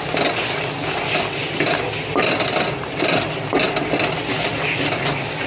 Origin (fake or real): real